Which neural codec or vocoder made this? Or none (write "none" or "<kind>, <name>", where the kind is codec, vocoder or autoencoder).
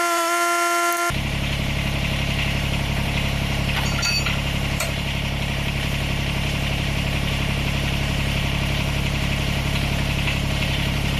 vocoder, BigVGAN v2